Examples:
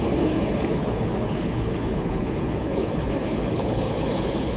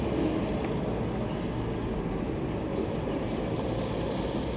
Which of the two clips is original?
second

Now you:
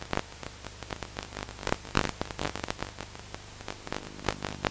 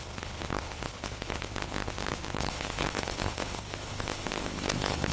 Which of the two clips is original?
first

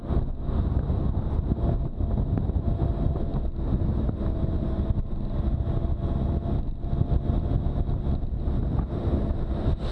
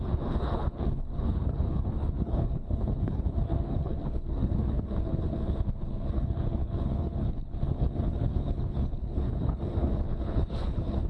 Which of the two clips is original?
first